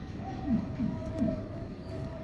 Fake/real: fake